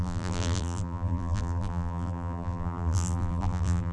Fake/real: fake